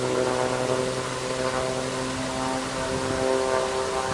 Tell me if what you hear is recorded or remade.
recorded